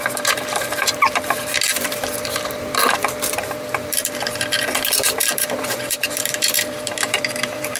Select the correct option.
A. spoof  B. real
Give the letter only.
A